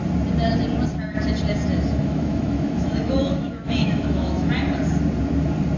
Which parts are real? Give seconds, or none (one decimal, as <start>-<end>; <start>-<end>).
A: 0.0-1.7; 4.5-5.8